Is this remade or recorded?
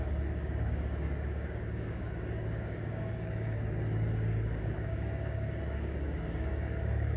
remade